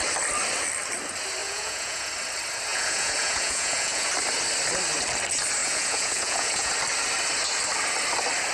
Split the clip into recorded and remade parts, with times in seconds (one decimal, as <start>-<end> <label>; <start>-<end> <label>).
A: 0.0-1.4 recorded; 1.4-2.1 remade; 2.1-2.7 recorded; 2.7-4.1 remade; 4.1-5.6 recorded; 5.6-6.7 remade; 6.7-8.5 recorded